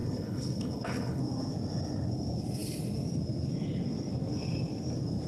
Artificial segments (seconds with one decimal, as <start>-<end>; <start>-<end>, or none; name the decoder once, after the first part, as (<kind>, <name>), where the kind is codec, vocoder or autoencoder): 0.0-1.2 (codec, HILCodec)